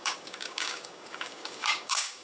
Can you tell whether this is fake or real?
fake